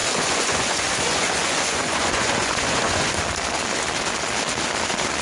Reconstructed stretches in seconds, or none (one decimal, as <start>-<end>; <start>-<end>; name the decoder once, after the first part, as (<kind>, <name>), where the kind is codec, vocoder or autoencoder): 0.0-3.1 (vocoder, Vocos)